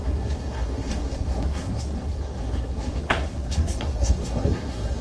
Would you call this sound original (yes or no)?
no